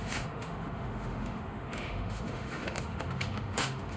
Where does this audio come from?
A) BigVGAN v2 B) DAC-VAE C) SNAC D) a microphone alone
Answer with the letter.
B